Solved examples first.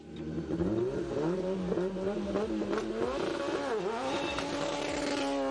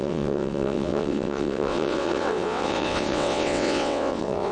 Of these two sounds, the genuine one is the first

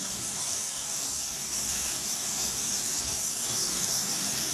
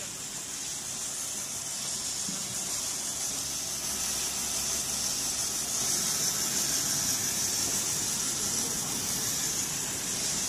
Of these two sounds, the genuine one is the second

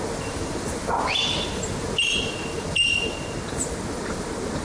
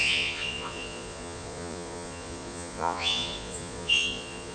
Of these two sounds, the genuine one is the first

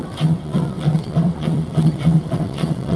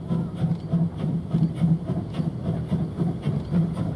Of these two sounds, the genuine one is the second